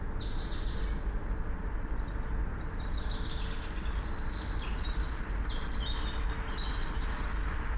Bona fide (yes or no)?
yes